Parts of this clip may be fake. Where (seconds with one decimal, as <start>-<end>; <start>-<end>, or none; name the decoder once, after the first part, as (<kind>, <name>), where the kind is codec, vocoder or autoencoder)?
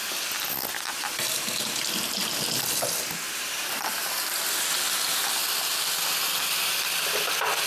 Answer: 3.0-5.4 (vocoder, BigVGAN v2)